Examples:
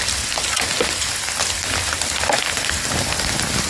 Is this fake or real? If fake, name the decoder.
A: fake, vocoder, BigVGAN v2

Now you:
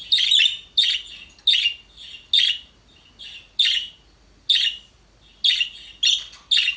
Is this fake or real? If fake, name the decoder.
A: real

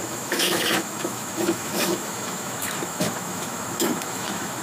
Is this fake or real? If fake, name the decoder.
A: fake, autoencoder, DAC-VAE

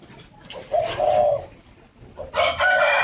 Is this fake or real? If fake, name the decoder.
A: real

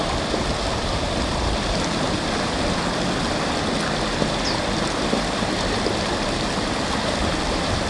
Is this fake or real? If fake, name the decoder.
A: real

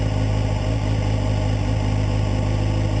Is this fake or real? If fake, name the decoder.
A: real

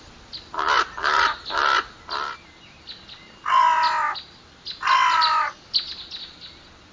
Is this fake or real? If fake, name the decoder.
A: real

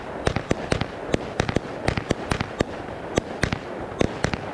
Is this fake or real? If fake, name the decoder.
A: real